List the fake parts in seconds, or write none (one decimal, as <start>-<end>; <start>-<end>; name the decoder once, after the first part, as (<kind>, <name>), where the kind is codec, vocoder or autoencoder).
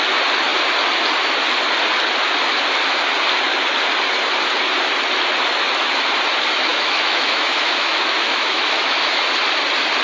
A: 6.7-9.2 (autoencoder, DAC-VAE)